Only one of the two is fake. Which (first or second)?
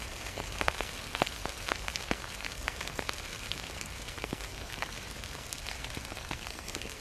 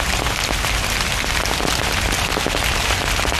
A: first